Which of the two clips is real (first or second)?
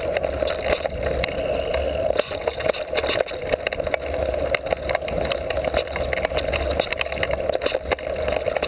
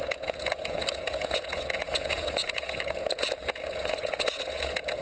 first